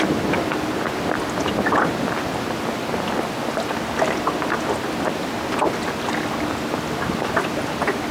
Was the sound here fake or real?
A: real